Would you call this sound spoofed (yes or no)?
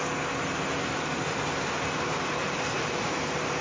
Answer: no